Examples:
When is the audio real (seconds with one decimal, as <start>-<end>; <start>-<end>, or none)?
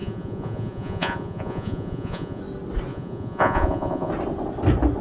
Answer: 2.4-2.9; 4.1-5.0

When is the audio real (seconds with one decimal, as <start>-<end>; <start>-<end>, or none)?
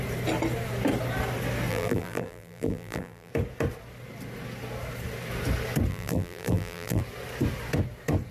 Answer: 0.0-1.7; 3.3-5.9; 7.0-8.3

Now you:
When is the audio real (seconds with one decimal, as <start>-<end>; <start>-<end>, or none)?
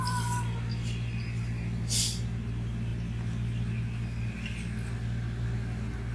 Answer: 0.0-6.1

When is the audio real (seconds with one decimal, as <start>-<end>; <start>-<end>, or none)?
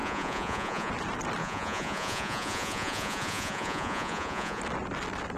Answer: 0.9-1.4; 4.6-5.4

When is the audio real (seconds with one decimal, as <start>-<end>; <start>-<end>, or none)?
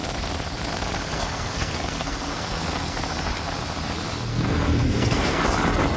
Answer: 0.0-1.1; 3.1-4.3; 5.4-6.0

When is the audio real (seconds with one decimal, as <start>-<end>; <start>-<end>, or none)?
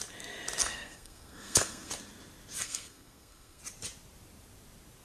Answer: 0.0-0.6; 1.9-2.6; 3.6-5.0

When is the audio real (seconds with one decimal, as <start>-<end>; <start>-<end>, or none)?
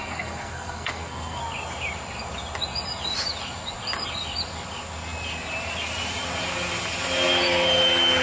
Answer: 1.4-8.2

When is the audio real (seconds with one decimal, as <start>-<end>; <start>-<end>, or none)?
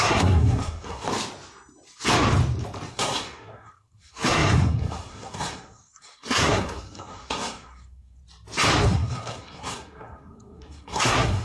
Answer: 1.1-2.9; 8.2-8.8